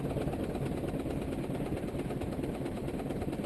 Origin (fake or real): real